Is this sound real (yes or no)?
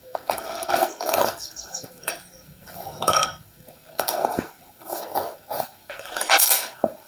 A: no